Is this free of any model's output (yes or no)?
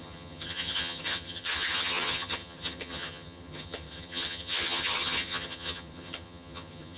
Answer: no